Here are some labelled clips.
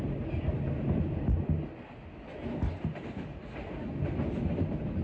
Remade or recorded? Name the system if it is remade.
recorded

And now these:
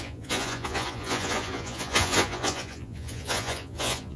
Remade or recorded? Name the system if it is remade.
remade, vocoder, Vocos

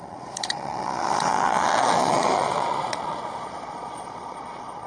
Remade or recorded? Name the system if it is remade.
remade, vocoder, Vocos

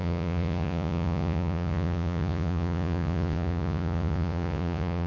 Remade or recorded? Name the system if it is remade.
remade, vocoder, Vocos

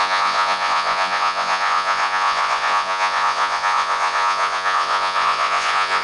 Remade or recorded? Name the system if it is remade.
remade, vocoder, Vocos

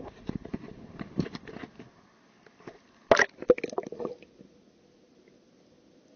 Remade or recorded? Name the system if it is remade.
recorded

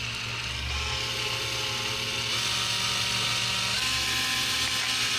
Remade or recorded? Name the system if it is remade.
recorded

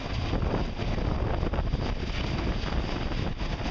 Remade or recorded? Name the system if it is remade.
recorded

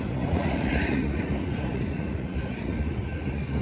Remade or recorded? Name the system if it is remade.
remade, vocoder, Vocos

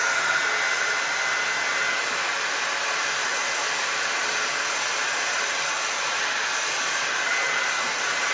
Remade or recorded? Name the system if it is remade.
recorded